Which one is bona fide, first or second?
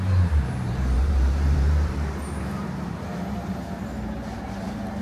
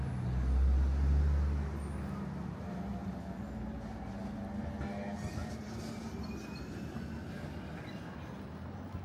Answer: second